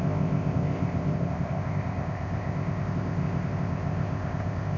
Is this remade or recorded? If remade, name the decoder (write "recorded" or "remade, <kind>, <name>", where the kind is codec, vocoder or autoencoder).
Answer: remade, codec, ZipCodec